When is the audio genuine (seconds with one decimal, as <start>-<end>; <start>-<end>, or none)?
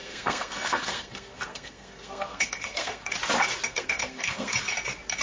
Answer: 3.1-3.7; 4.5-5.2